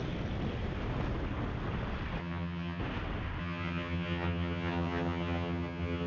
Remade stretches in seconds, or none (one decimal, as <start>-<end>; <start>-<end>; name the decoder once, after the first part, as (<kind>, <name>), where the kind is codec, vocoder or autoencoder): 2.2-2.8 (vocoder, HiFi-GAN); 3.4-6.1